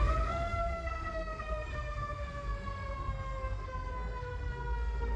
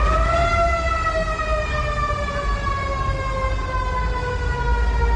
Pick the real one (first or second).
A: second